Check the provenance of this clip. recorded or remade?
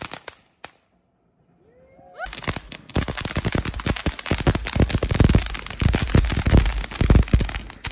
recorded